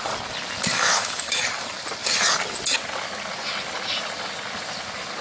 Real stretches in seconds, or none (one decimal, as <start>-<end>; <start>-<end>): 0.0-0.7; 1.4-5.2